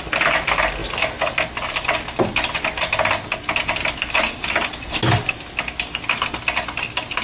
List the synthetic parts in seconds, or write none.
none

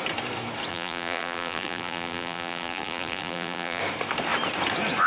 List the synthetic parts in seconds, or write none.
0.7-3.8 (vocoder, BigVGAN v2)

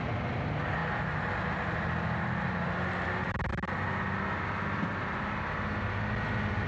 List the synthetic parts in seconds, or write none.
none

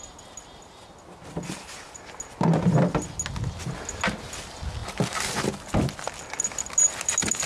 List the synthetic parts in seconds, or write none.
none

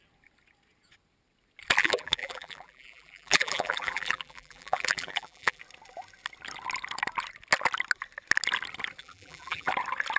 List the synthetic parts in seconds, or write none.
1.8-5.6 (vocoder, BigVGAN v2); 9.0-9.7